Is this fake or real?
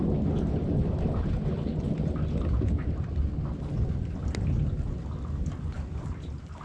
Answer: real